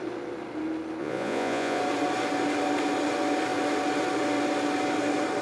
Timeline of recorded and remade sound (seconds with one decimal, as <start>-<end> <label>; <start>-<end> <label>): 0.0-1.0 recorded; 1.0-1.8 remade; 1.8-5.4 recorded